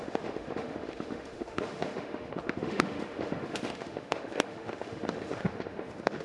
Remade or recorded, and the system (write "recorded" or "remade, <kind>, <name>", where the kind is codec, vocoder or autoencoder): remade, autoencoder, DAC-VAE